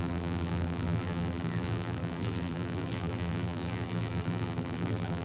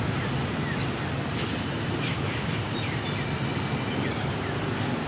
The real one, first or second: second